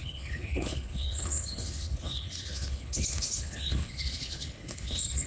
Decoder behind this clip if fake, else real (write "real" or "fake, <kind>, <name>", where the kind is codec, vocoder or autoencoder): fake, codec, HILCodec